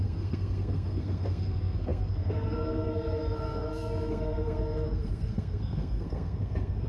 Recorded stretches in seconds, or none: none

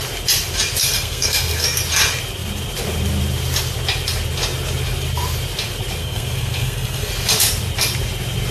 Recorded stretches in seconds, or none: 0.0-0.8; 1.8-6.0; 7.1-8.5